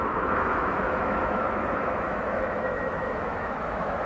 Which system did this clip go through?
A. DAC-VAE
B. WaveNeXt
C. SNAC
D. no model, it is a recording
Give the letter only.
A